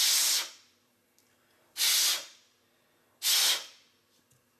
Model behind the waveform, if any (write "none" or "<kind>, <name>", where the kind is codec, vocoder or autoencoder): none